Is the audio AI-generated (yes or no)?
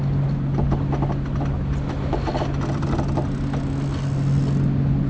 no